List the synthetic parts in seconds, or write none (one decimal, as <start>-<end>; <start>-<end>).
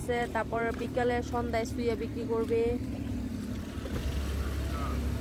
0.0-1.1; 2.1-3.3